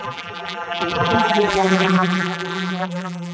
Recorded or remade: remade